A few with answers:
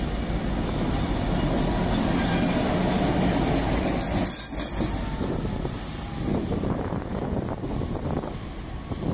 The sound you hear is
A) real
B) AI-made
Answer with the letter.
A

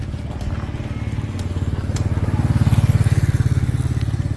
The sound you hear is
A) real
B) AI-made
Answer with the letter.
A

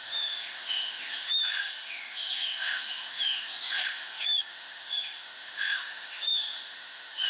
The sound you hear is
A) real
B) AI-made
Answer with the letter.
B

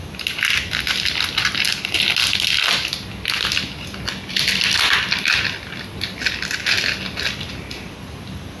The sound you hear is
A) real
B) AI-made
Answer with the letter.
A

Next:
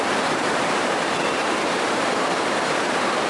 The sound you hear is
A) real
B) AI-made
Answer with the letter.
B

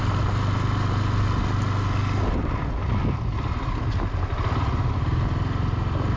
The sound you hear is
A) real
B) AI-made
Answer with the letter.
A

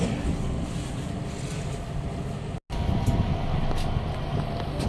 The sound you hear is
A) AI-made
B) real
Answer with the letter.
B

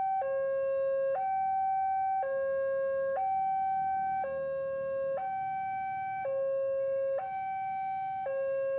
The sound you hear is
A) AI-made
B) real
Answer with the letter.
B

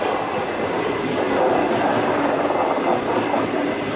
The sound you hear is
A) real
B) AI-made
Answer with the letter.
A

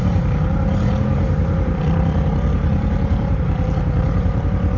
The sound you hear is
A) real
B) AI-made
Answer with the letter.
B